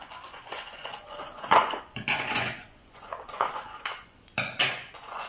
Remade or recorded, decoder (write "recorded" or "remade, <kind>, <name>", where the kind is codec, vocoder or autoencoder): remade, vocoder, Vocos